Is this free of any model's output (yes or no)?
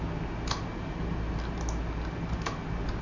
yes